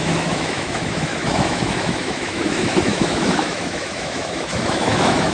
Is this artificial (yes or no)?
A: yes